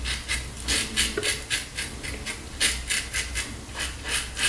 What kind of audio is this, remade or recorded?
recorded